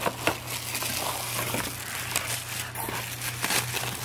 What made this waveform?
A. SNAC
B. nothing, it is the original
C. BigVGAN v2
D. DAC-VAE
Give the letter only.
B